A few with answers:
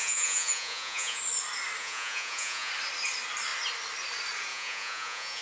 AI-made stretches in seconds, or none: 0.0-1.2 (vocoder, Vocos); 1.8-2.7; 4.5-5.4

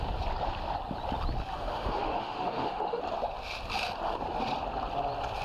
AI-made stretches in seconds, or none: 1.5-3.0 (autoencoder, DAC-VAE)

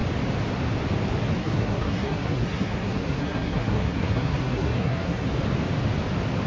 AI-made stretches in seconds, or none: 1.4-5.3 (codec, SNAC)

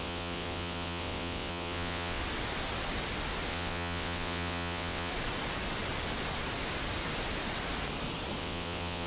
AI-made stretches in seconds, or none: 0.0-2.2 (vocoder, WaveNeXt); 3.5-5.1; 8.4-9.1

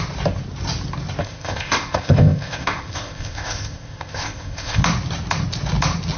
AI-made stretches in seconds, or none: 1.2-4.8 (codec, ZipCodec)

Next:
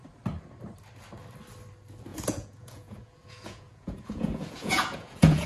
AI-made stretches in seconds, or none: 2.1-5.5 (vocoder, Vocos)